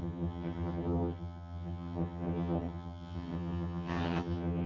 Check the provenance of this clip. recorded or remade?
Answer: remade